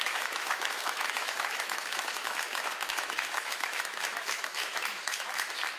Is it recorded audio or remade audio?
remade